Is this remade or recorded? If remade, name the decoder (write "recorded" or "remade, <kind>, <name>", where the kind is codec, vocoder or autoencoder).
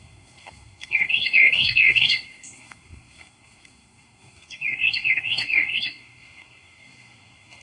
remade, codec, SNAC